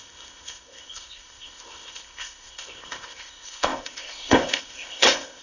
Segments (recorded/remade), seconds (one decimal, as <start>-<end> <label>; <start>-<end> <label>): 0.0-5.4 remade